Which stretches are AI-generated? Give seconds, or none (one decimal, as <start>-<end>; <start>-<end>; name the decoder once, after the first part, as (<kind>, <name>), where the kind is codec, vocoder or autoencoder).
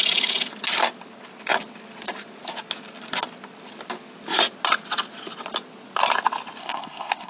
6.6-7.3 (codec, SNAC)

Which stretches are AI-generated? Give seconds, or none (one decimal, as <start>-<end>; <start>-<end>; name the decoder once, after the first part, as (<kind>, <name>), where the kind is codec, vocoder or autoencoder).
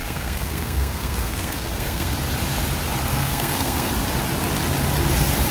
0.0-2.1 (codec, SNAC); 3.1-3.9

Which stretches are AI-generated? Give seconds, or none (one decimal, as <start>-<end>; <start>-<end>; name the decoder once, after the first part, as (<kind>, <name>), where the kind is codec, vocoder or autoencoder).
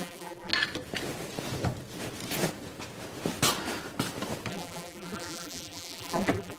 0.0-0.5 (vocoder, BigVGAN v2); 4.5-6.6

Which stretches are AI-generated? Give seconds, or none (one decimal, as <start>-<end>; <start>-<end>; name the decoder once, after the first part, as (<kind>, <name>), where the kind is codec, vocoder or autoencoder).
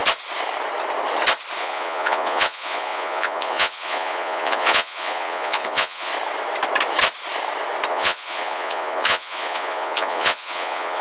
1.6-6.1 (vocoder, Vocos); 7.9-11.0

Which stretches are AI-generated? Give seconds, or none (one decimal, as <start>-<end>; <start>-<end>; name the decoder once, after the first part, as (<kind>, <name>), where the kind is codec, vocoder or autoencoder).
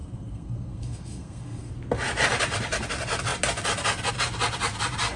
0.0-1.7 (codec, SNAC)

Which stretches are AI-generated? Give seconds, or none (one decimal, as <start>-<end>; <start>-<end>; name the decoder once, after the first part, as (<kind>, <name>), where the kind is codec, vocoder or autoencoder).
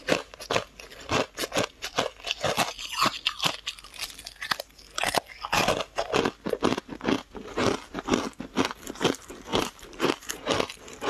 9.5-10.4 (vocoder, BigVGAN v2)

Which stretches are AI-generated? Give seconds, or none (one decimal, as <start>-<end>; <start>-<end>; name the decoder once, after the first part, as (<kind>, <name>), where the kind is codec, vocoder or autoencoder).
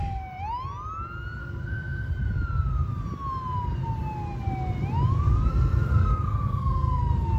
1.4-2.1 (codec, SNAC); 5.5-7.0